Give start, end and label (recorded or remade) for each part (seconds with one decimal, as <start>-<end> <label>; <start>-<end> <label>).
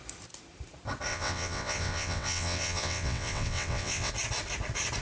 0.0-1.1 recorded; 1.1-4.1 remade; 4.1-5.0 recorded